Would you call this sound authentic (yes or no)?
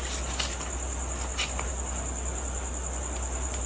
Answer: yes